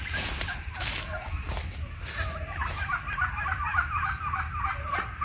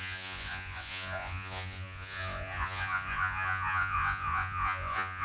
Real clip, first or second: first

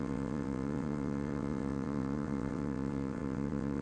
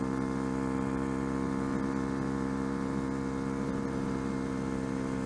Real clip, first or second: second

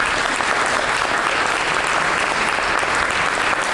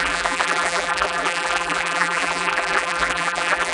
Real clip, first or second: first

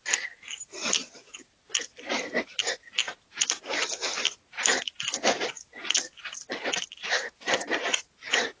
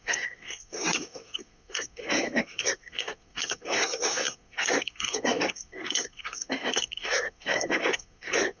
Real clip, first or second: first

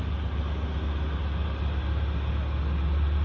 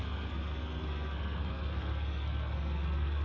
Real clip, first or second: first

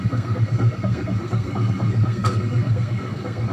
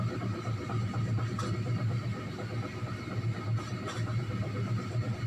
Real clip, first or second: second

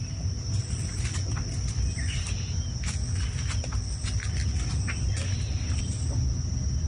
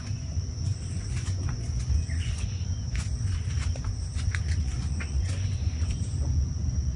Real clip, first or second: first